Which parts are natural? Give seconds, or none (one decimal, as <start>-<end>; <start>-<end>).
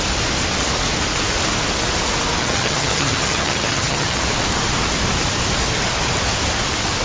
0.0-2.4; 4.2-7.0